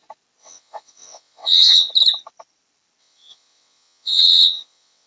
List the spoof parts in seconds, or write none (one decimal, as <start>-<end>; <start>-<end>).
0.4-1.9; 3.0-5.1